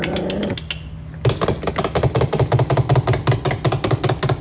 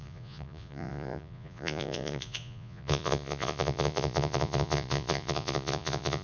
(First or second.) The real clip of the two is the first